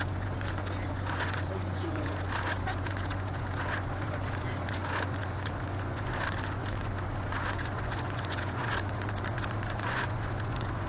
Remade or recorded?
remade